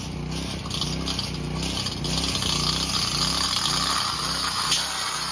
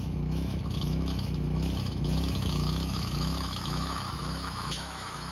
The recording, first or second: first